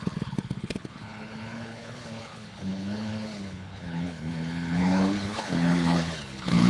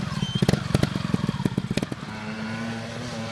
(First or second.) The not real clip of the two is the first